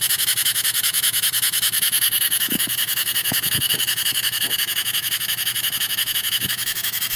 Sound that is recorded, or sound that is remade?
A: remade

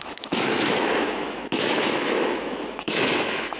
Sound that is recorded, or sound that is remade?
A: remade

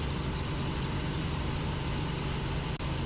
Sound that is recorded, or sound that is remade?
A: recorded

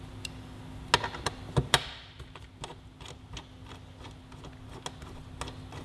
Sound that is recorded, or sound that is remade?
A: recorded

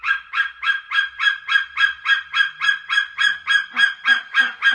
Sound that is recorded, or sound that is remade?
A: recorded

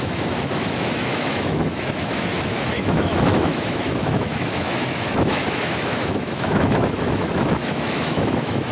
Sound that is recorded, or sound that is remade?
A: remade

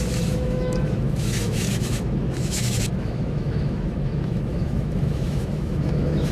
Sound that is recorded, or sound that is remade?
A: remade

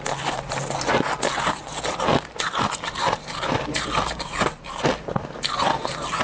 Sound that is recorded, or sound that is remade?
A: recorded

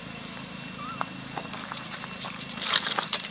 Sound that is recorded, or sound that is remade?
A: recorded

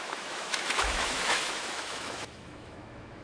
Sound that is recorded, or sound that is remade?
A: remade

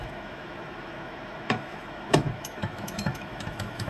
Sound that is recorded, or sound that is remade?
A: remade